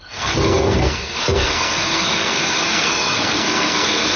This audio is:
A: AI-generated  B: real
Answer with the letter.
A